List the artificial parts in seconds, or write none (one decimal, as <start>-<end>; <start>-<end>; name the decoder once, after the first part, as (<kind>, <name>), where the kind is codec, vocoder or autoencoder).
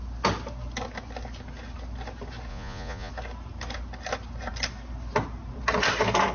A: 2.5-3.1 (vocoder, Vocos)